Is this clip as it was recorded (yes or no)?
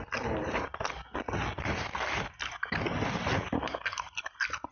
yes